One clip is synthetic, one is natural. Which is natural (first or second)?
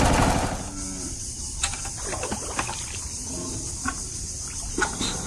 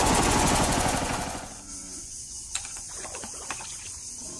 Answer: first